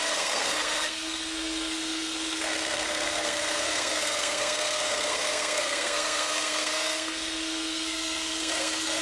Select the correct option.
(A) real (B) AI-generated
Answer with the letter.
B